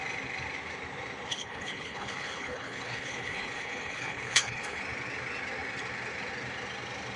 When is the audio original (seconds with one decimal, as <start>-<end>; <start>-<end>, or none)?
0.0-1.3; 4.8-7.2